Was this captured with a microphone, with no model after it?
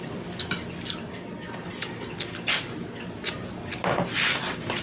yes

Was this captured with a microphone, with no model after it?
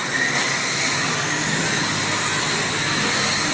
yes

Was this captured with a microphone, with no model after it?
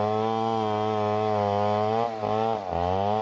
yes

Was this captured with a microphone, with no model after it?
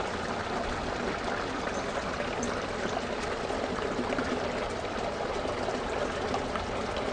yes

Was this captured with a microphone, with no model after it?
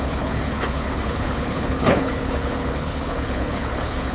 no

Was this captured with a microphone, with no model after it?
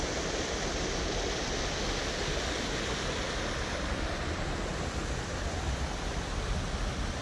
yes